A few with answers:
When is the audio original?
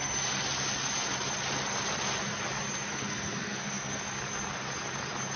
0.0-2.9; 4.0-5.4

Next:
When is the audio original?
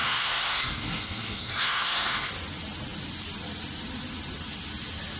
2.3-5.2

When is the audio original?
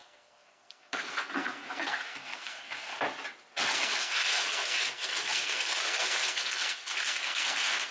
2.9-3.7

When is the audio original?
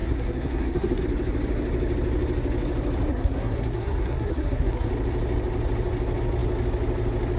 1.0-3.1; 4.9-7.4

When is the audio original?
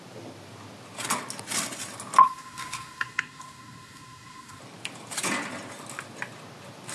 0.0-2.2; 4.6-6.9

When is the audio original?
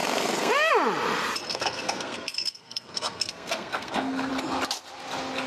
0.5-1.5; 4.3-5.5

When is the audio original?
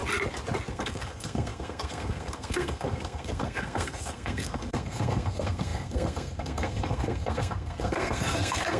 0.0-0.7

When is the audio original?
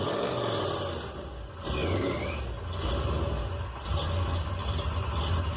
0.0-5.6